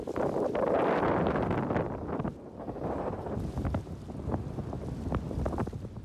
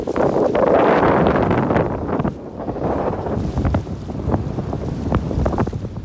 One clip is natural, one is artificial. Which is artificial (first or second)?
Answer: second